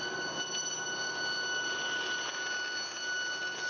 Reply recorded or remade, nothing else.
recorded